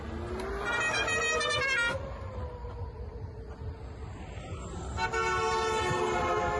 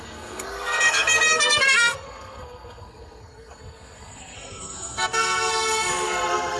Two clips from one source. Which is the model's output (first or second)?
second